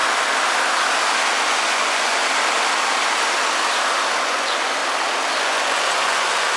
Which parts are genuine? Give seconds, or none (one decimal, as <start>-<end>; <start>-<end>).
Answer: 0.0-1.5; 2.2-4.2; 4.8-5.4

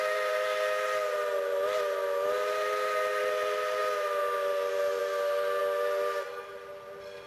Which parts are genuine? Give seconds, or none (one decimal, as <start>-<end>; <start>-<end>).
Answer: 0.0-7.3

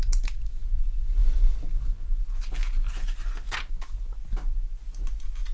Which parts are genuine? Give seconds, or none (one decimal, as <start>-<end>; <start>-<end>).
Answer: 0.0-5.5

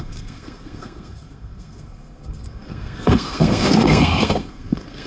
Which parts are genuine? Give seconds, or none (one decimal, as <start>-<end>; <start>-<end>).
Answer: none

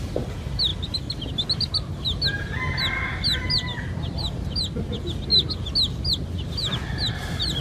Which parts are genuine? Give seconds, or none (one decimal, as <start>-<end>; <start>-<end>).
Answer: 0.0-7.6

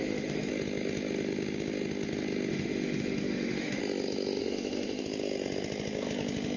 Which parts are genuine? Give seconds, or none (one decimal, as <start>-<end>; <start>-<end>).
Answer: 0.5-2.5; 3.8-4.4; 5.0-6.6

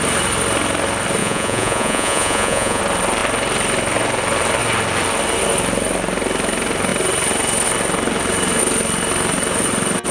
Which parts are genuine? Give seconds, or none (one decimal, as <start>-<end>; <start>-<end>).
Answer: 0.0-1.2; 2.8-10.1